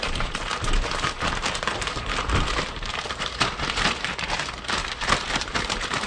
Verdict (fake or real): fake